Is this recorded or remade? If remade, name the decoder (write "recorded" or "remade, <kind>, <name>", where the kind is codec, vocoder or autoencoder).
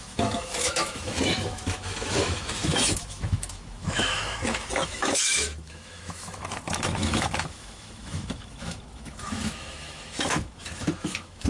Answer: remade, autoencoder, DAC-VAE